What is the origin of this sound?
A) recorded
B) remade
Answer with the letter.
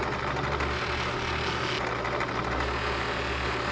A